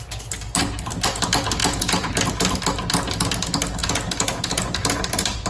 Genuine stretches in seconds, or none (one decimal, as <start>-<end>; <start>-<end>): 0.0-1.6; 2.1-5.5